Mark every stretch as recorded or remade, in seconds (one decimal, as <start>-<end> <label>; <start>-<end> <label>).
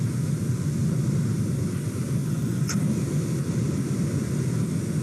0.0-2.2 recorded; 2.2-2.8 remade; 2.8-5.0 recorded